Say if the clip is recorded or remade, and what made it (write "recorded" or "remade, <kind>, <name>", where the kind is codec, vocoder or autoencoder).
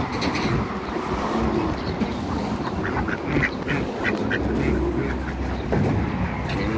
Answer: recorded